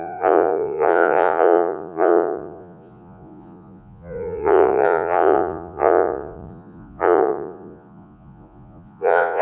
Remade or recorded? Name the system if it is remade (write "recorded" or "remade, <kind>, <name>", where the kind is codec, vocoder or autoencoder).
remade, vocoder, Vocos